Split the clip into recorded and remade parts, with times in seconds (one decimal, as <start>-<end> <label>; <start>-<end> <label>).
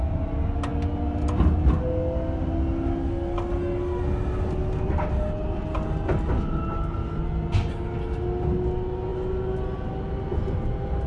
0.0-11.1 recorded